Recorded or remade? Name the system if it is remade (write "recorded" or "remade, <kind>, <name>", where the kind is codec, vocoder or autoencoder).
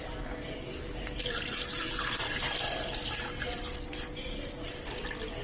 recorded